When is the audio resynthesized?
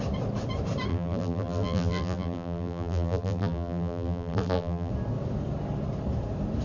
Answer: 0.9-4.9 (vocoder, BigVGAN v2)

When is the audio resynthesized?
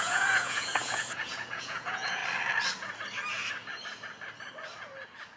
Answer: 0.0-2.2 (vocoder, Vocos)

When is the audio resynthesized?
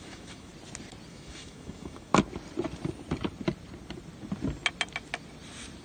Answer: 0.0-0.5 (autoencoder, DAC-VAE); 1.1-2.1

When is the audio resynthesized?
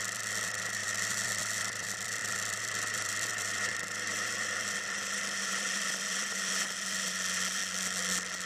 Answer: 0.0-7.6 (vocoder, BigVGAN v2)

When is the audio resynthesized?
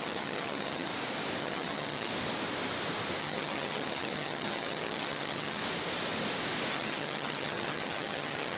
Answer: 0.0-0.9 (vocoder, HiFi-GAN); 1.4-2.1; 3.2-5.6; 6.7-8.6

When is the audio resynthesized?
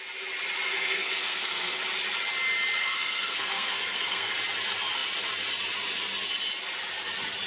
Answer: 0.7-1.8 (codec, SNAC); 2.8-4.3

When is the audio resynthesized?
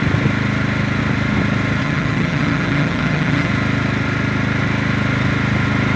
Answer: 1.8-3.5 (vocoder, HiFi-GAN)